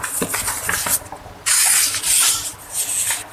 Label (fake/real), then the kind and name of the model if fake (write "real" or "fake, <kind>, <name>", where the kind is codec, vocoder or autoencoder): real